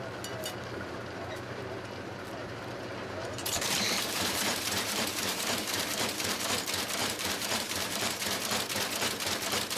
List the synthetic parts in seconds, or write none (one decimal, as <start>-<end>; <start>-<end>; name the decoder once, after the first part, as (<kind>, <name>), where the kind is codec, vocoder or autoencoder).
2.4-6.5 (vocoder, BigVGAN v2); 7.0-8.4